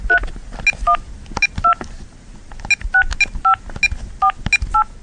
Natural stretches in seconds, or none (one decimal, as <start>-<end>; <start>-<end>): 0.0-5.0